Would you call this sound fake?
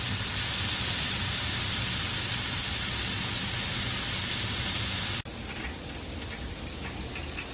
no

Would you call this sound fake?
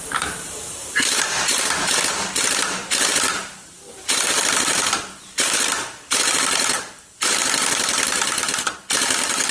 yes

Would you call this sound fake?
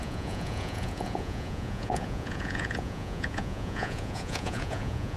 yes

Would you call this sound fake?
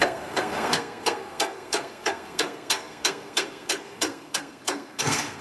yes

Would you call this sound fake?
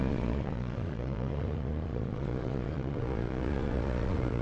yes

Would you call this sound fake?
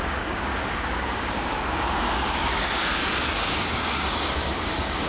yes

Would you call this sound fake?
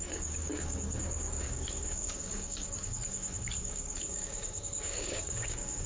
yes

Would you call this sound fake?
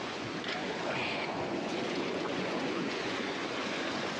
yes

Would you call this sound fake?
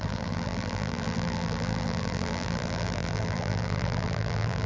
yes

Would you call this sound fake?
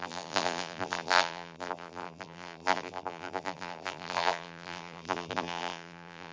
yes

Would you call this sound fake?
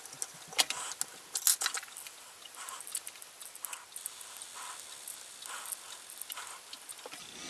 no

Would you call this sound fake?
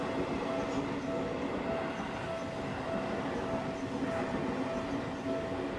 no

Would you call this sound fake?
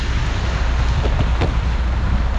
no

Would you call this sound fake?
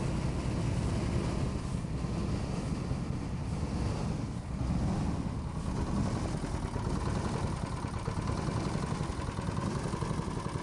no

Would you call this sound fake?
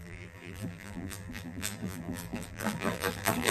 yes